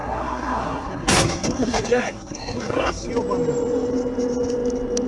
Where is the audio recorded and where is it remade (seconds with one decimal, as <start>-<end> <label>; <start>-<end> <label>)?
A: 0.0-3.1 remade; 3.1-5.1 recorded